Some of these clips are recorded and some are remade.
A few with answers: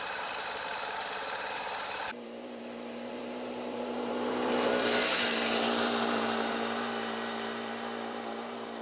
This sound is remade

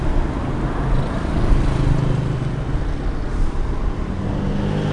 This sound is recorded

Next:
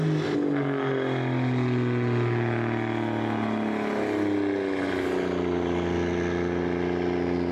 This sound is recorded